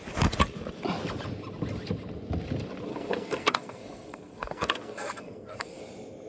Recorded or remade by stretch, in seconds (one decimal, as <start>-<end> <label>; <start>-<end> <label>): 0.0-2.9 recorded; 2.9-5.8 remade; 5.8-6.3 recorded